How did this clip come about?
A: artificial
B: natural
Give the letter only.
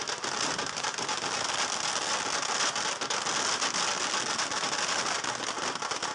B